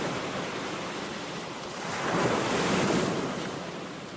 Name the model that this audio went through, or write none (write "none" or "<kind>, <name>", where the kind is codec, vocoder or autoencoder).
vocoder, BigVGAN v2